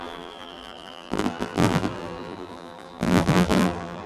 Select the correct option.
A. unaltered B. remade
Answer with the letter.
B